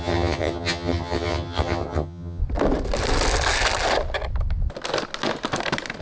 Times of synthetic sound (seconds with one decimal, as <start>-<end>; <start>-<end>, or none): 0.0-2.4